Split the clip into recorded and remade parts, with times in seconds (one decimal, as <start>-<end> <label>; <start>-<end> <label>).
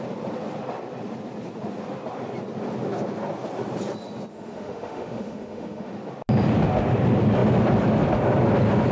0.0-4.3 recorded; 4.3-5.9 remade; 5.9-8.9 recorded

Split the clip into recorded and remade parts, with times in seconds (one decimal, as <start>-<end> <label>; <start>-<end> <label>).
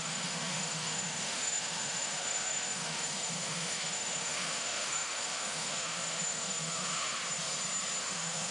0.0-7.2 remade; 7.2-8.0 recorded; 8.0-8.5 remade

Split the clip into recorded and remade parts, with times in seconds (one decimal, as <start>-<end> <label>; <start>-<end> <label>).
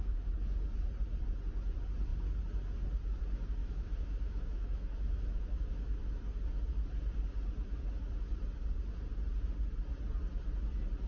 0.0-3.6 recorded; 3.6-6.3 remade; 6.3-11.1 recorded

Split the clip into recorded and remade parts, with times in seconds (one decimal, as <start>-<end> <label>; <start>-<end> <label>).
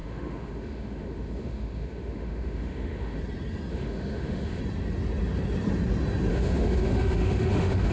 0.0-3.2 remade; 3.2-3.7 recorded; 3.7-4.6 remade; 4.6-6.3 recorded; 6.3-7.9 remade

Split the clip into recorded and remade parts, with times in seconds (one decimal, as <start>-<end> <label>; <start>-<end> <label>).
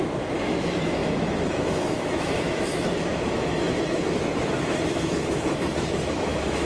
0.0-6.7 remade